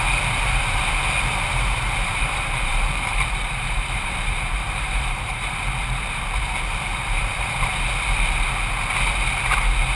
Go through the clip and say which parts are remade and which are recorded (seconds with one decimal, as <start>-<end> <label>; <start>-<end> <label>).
0.0-1.3 recorded; 1.3-5.6 remade; 5.6-6.9 recorded; 6.9-7.6 remade; 7.6-9.9 recorded